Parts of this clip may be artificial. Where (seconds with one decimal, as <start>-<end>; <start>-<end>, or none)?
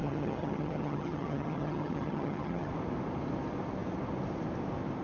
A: 0.0-2.7